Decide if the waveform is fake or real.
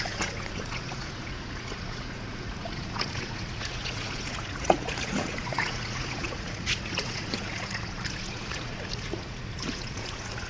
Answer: fake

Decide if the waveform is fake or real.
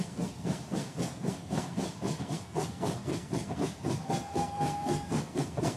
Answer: fake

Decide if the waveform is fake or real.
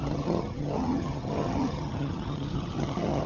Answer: fake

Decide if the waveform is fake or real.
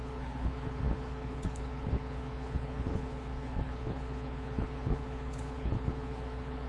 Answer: fake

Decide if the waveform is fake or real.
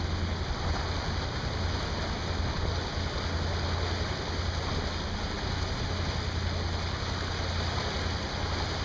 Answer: real